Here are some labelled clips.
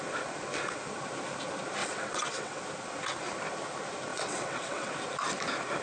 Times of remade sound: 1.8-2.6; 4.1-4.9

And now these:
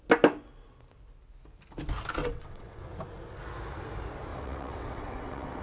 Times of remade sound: 2.2-2.8; 4.3-5.6

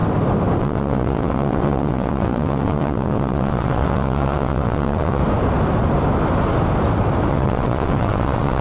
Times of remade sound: 0.6-5.2; 7.3-8.6

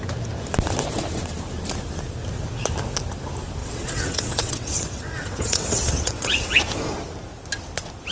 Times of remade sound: 3.6-6.6

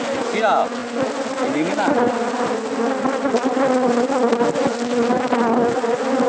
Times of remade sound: none

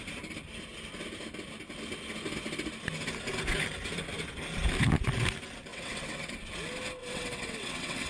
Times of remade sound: 5.7-6.3; 7.0-8.1

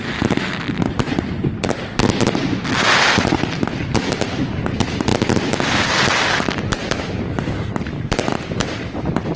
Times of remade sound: none

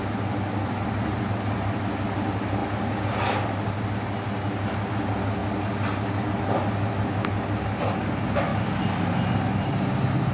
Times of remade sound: none